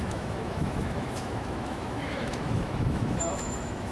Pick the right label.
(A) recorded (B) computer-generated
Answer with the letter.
B